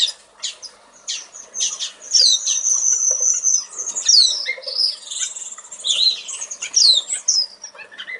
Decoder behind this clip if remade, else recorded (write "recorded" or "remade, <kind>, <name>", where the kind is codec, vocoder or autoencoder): recorded